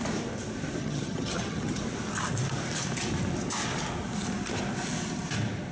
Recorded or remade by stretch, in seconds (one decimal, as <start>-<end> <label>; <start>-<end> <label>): 0.0-0.8 recorded; 0.8-1.8 remade; 1.8-5.7 recorded